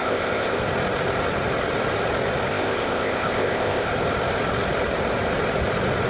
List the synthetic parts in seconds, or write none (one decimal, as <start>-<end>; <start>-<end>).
0.0-0.6; 2.5-3.9